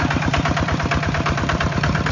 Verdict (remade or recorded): remade